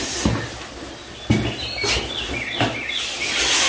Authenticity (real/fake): real